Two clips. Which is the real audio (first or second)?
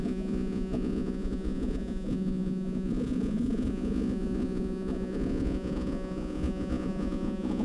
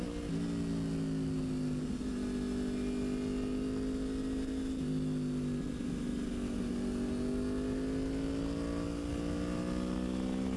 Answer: second